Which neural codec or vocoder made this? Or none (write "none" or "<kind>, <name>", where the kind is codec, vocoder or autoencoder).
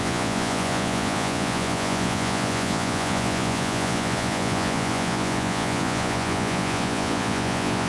vocoder, Vocos